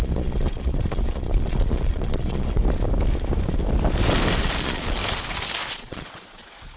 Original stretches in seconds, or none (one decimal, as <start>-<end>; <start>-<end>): 2.6-4.4; 5.0-5.7